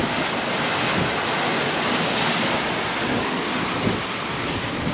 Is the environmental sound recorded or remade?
recorded